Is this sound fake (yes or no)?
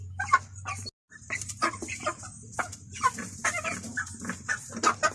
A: no